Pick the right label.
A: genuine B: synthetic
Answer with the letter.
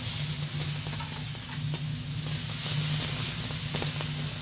A